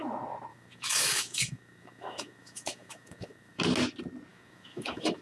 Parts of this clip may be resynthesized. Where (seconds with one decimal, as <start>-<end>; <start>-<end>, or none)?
0.5-3.6; 4.3-5.2

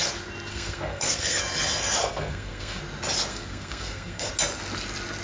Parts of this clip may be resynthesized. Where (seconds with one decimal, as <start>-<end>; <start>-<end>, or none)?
0.5-1.4; 2.0-2.8; 3.3-4.3

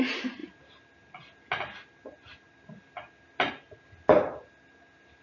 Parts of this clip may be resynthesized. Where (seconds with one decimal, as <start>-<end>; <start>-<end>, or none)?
none

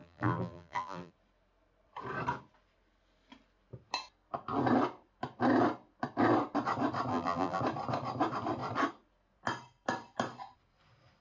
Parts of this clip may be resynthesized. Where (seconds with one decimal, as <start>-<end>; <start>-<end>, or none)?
0.0-1.1; 7.1-7.6

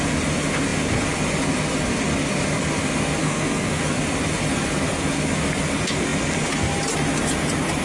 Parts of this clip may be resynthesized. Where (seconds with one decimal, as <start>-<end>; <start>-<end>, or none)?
3.2-3.8

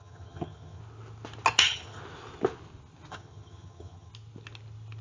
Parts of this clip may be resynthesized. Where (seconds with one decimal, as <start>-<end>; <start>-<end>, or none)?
0.0-0.8; 1.6-2.0; 3.1-4.1

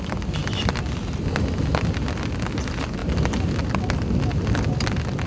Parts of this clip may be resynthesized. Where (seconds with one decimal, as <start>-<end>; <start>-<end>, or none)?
none